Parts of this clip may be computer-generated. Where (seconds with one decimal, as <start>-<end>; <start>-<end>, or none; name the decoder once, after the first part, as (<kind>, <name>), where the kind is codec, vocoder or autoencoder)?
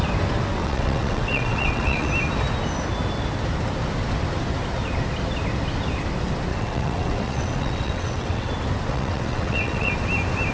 0.6-2.1 (vocoder, WaveNeXt); 6.5-8.5; 8.9-9.9